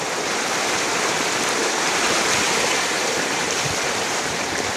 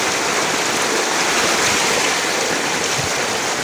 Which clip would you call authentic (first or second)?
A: second